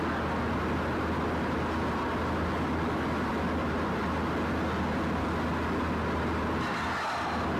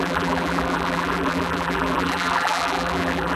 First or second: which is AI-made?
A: second